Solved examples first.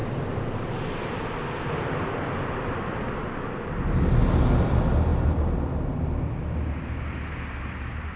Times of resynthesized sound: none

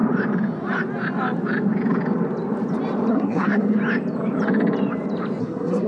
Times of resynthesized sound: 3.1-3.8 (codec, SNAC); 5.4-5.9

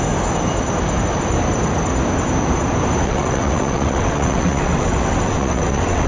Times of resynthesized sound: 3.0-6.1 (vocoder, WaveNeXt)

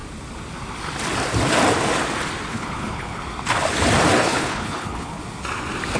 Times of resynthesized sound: 2.5-3.2 (codec, HILCodec); 4.2-5.2

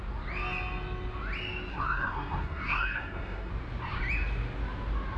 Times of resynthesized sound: 1.7-3.5 (codec, SNAC)